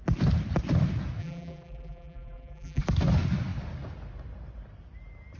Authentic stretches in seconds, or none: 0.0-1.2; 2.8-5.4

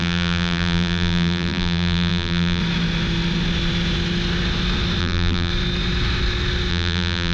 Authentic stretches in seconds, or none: 2.6-5.0; 5.5-6.7